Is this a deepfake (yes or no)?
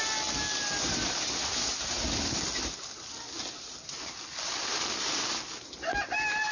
no